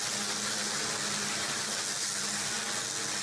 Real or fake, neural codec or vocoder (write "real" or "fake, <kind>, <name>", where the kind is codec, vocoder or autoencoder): real